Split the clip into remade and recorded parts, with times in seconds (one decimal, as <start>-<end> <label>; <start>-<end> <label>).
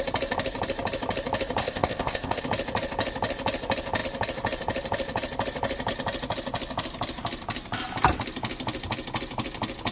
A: 0.0-1.6 recorded; 1.6-2.4 remade; 2.4-9.9 recorded